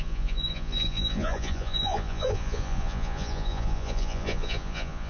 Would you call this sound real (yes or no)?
no